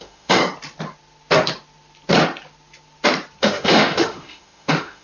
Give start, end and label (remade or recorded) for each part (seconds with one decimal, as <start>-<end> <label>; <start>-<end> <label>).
0.0-0.4 remade; 0.4-3.4 recorded; 3.4-5.0 remade